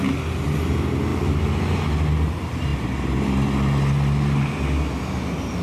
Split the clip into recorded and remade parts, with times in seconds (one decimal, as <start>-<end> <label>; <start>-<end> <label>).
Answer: 0.0-5.6 recorded